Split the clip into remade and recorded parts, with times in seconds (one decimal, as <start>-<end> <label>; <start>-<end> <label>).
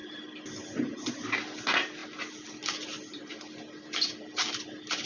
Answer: 0.0-5.1 recorded